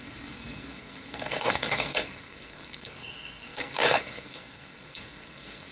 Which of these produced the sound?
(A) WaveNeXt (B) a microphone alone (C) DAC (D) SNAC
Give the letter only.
D